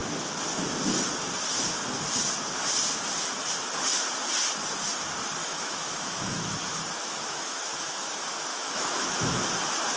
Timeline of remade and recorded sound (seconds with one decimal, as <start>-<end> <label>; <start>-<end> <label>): 0.0-5.4 recorded; 5.4-8.1 remade; 8.1-8.5 recorded; 8.5-9.4 remade; 9.4-10.0 recorded